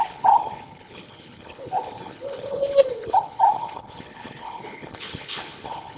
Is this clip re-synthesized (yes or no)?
yes